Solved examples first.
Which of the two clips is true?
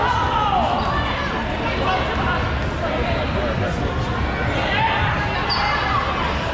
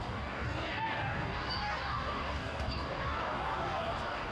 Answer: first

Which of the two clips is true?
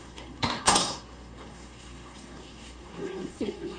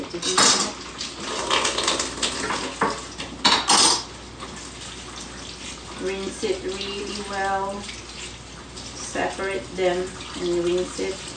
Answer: second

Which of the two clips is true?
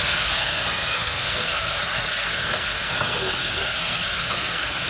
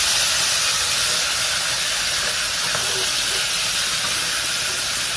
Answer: second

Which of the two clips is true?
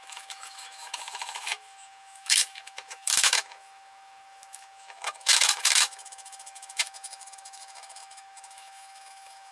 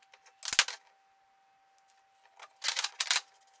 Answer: second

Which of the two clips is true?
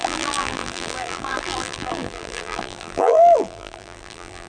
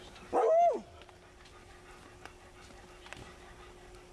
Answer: second